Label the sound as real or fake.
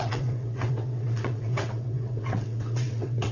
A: fake